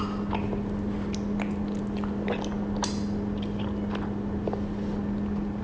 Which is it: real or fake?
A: real